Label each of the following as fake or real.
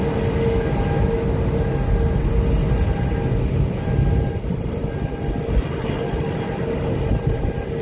real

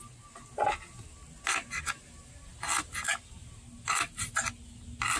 real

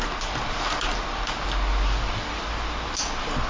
real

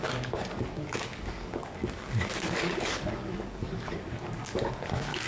fake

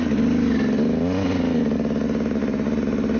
real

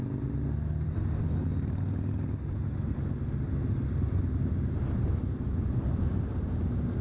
real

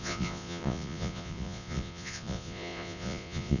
fake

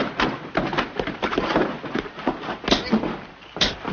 real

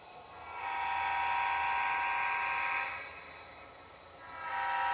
real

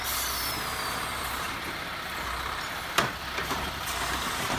real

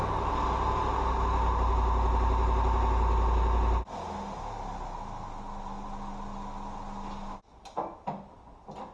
real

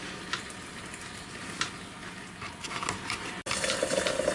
real